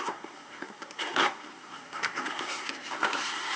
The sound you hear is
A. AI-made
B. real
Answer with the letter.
A